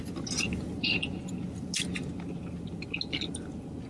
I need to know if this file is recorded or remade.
recorded